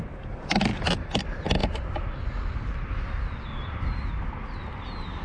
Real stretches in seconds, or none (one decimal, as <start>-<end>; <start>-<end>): 0.0-5.2

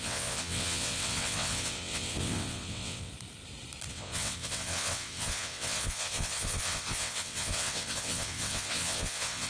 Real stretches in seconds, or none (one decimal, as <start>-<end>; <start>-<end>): 3.1-3.9